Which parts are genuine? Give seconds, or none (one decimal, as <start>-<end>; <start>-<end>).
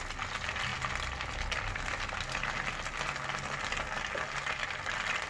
0.0-5.3